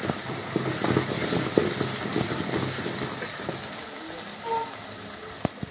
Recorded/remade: recorded